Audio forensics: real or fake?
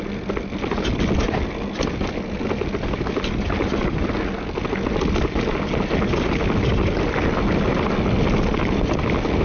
real